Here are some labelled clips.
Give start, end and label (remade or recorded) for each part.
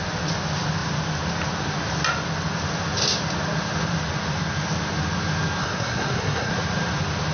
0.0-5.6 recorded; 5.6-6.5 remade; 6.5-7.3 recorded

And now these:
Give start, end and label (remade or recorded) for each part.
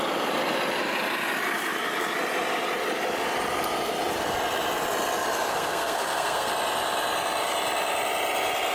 0.0-5.5 recorded; 5.5-6.5 remade; 6.5-8.7 recorded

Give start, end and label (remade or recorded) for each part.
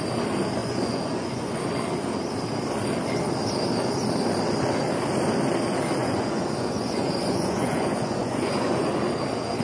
0.0-0.6 recorded; 0.6-1.6 remade; 1.6-6.0 recorded; 6.0-9.0 remade; 9.0-9.6 recorded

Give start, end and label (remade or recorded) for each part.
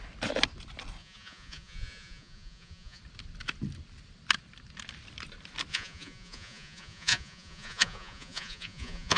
0.0-1.0 recorded; 1.0-3.0 remade; 3.0-5.7 recorded; 5.7-9.2 remade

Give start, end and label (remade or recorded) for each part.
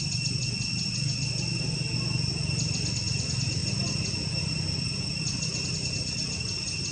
0.0-6.9 recorded